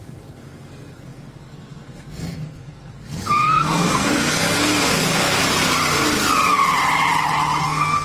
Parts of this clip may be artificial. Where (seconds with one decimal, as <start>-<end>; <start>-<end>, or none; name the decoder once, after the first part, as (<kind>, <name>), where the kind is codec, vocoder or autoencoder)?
0.0-5.4 (codec, SNAC); 7.6-8.0